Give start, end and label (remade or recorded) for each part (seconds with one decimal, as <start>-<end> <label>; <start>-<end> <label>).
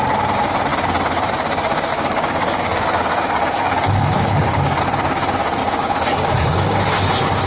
0.0-1.9 recorded; 1.9-4.8 remade; 4.8-5.6 recorded; 5.6-7.1 remade; 7.1-7.5 recorded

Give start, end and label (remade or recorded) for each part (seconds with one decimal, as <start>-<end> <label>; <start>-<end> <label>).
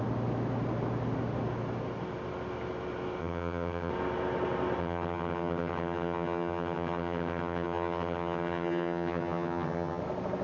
0.0-3.2 recorded; 3.2-3.9 remade; 3.9-4.8 recorded; 4.8-10.0 remade; 10.0-10.4 recorded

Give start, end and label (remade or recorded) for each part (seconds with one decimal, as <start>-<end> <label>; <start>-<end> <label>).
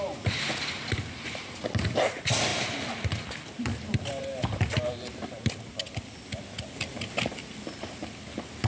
0.0-8.7 recorded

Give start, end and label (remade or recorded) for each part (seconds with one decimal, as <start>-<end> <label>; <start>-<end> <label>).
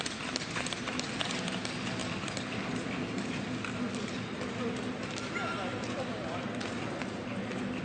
0.0-7.8 recorded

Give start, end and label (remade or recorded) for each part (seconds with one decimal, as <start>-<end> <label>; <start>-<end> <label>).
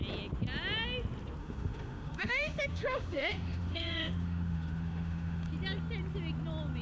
0.0-1.4 recorded; 1.4-5.5 remade; 5.5-6.8 recorded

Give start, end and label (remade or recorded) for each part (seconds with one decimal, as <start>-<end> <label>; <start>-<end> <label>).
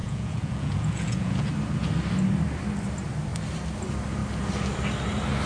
0.0-1.5 remade; 1.5-5.5 recorded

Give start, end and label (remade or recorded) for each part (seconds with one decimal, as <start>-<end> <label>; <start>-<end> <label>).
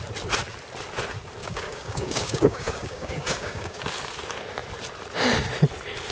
0.0-1.4 recorded; 1.4-3.8 remade; 3.8-6.1 recorded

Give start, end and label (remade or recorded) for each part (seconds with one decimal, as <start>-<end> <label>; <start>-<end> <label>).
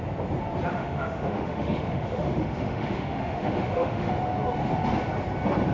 0.0-0.7 recorded; 0.7-4.1 remade; 4.1-5.7 recorded